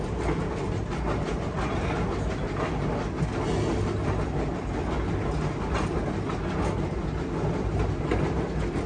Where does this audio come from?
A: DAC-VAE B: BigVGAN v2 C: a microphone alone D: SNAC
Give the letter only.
C